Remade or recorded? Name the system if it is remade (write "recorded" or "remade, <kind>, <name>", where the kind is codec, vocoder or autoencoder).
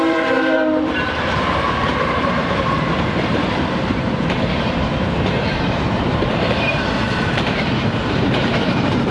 remade, vocoder, BigVGAN v2